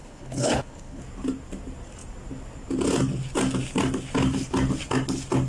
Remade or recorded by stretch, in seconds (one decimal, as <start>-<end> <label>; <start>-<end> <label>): 0.0-1.0 remade; 1.0-5.5 recorded